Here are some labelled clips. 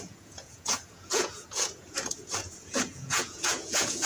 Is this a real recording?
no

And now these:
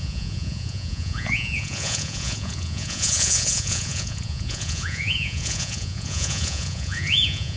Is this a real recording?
no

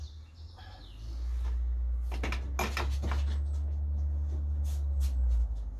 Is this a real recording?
yes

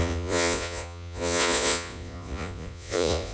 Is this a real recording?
no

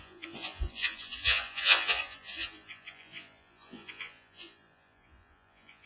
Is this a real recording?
no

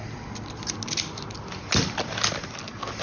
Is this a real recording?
yes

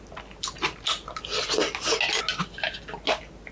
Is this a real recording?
yes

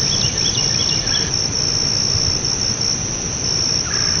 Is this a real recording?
yes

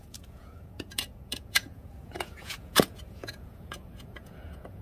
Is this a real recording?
no